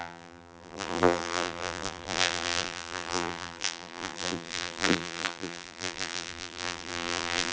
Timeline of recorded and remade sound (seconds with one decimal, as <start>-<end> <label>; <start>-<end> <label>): 0.0-7.5 remade